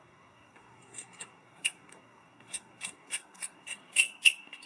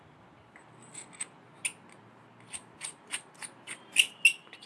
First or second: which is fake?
first